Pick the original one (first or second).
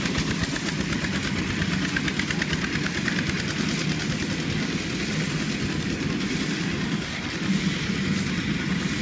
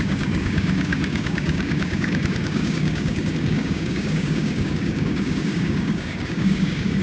first